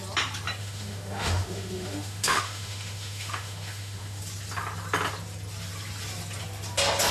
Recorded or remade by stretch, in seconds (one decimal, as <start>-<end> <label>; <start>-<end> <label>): 0.0-0.6 recorded; 0.6-4.2 remade; 4.2-7.1 recorded